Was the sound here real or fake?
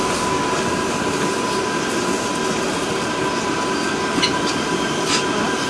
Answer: real